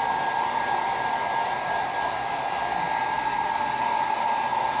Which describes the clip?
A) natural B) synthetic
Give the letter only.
A